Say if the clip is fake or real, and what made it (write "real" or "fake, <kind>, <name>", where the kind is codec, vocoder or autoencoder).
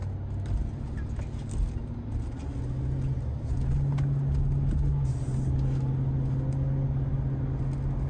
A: real